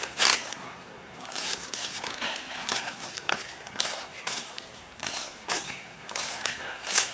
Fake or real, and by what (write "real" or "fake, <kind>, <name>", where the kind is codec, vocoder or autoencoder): fake, codec, SNAC